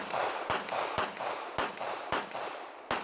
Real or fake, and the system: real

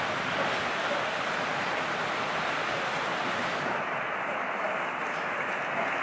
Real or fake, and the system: real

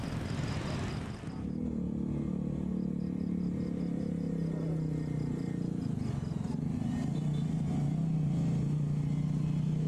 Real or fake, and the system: real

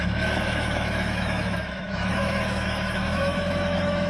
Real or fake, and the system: fake, autoencoder, DAC-VAE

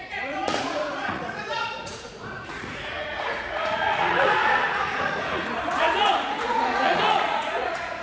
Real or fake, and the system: fake, vocoder, Vocos